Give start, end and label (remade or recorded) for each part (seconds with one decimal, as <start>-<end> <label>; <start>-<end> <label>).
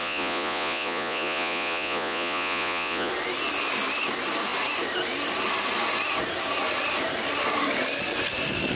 0.0-3.1 remade; 3.1-8.7 recorded